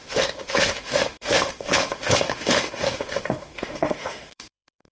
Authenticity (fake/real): fake